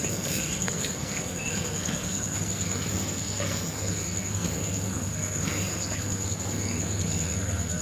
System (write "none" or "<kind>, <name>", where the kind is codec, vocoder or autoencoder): codec, SNAC